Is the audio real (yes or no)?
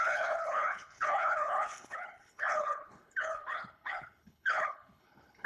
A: no